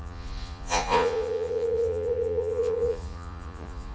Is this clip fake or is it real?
fake